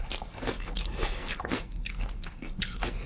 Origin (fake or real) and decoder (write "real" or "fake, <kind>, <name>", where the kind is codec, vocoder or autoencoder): fake, codec, SNAC